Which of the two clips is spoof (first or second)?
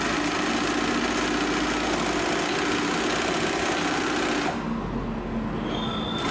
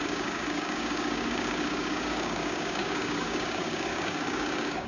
second